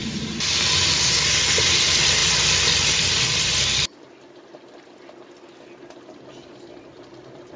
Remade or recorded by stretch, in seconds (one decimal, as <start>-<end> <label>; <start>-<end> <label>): 0.0-7.6 recorded